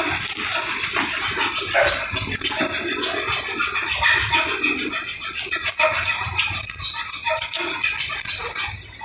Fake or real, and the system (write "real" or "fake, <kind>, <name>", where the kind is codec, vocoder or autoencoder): real